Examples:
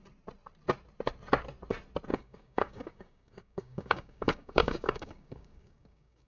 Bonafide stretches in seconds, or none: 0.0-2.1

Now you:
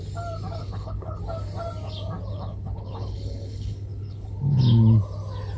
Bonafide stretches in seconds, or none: 0.0-0.6; 1.2-2.3; 4.6-5.6

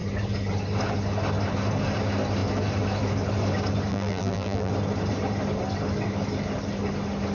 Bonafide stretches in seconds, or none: 0.0-3.9; 4.7-7.3

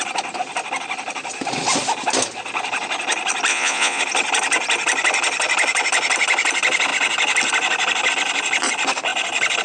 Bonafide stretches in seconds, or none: 0.0-3.5; 4.0-9.6

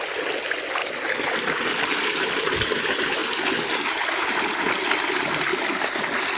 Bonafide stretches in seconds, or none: 0.0-6.4